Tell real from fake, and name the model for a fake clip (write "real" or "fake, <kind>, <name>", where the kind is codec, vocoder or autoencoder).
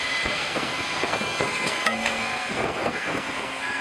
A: fake, codec, SNAC